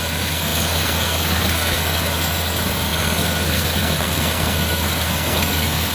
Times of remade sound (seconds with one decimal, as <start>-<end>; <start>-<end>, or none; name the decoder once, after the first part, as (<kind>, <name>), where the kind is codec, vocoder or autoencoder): 0.0-5.9 (codec, SNAC)